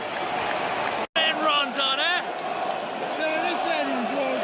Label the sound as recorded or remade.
recorded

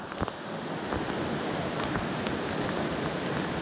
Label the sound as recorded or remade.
recorded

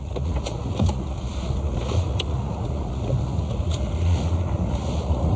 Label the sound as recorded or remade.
remade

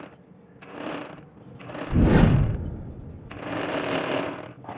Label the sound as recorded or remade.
recorded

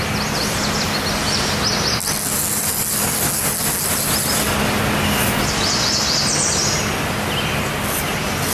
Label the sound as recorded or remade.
recorded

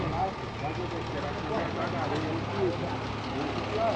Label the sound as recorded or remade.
recorded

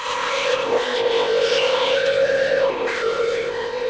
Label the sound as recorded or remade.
remade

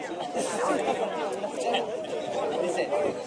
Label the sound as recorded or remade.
recorded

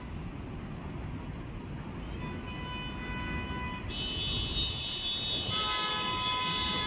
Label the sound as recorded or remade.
recorded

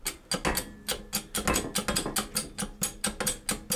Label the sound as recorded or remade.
recorded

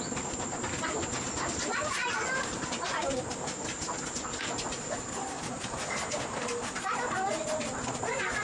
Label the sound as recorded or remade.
recorded